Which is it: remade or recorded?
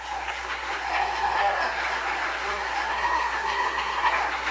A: remade